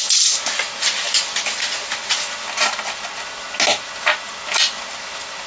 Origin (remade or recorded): recorded